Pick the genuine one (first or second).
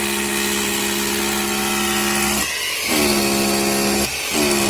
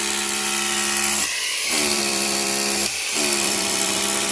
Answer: first